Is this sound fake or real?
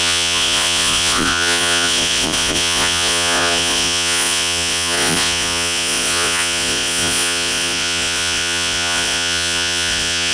fake